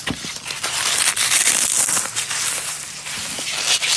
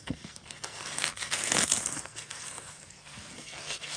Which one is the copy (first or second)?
second